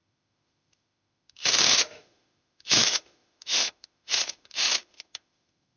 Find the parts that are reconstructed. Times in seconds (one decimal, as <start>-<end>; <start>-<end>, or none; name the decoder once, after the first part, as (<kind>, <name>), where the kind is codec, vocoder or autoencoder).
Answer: 0.0-5.8 (autoencoder, DAC-VAE)